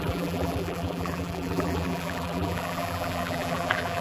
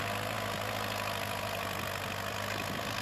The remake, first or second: first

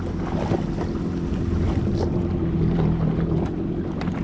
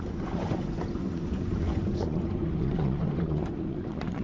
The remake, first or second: second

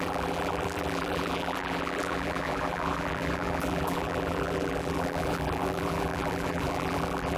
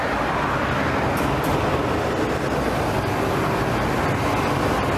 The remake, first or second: first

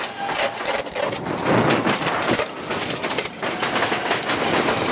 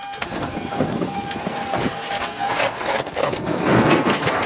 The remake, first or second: second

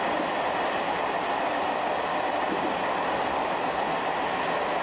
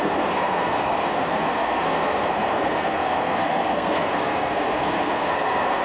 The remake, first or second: second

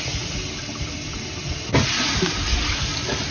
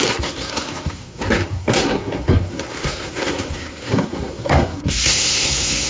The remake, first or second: second